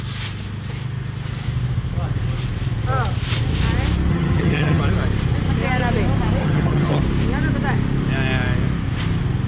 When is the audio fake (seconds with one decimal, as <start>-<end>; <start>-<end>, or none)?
4.1-4.8; 6.4-7.0